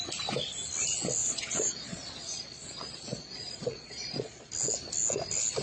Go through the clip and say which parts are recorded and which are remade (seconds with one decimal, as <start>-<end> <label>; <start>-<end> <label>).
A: 0.0-1.2 recorded; 1.2-4.5 remade; 4.5-5.6 recorded